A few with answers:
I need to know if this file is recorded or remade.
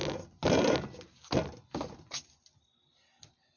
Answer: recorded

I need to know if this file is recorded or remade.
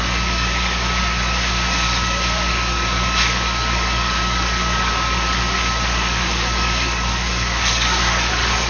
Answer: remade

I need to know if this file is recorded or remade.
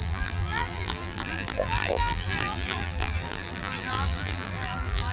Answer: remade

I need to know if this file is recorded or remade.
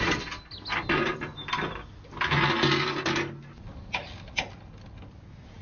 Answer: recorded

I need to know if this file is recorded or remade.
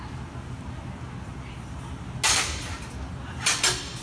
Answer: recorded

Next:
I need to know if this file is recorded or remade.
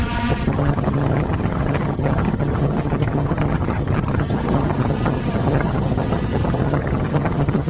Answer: remade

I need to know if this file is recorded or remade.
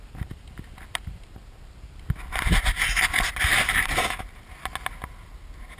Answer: recorded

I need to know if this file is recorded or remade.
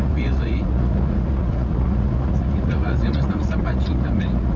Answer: remade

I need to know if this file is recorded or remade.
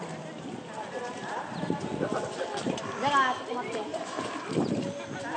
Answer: recorded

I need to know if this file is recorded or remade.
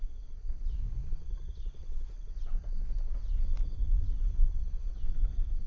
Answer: recorded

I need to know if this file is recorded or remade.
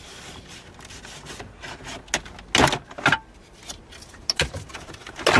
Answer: recorded